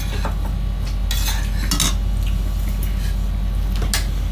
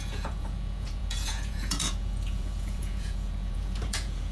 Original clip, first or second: first